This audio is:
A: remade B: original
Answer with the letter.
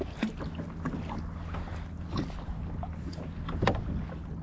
B